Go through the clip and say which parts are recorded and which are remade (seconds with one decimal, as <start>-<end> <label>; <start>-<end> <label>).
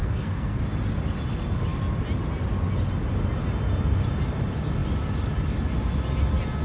0.0-0.6 remade; 0.6-6.6 recorded